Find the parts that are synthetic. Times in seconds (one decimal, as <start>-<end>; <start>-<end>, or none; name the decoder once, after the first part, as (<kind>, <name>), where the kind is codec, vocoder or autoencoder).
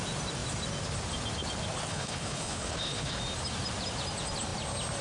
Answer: 1.9-3.2 (codec, HILCodec)